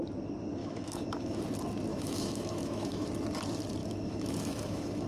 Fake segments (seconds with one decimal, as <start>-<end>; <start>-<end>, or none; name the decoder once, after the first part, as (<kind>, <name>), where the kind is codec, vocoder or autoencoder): 0.6-1.4 (autoencoder, DAC-VAE); 1.9-3.1; 3.8-5.1